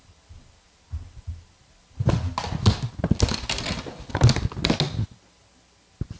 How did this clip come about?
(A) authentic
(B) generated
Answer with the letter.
A